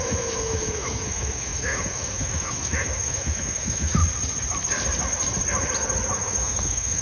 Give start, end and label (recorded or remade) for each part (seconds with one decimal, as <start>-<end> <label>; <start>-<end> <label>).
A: 0.0-4.0 remade; 4.0-6.1 recorded; 6.1-7.0 remade